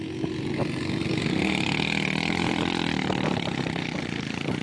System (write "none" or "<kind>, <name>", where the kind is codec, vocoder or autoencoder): none